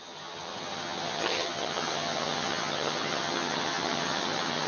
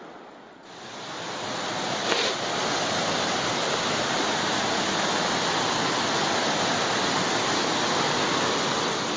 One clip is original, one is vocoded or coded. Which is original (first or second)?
second